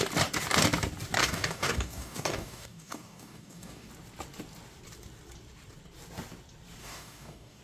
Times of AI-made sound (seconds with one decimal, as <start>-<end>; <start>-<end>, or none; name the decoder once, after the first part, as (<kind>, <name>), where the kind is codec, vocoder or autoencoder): 1.2-3.9 (codec, DAC); 6.8-7.6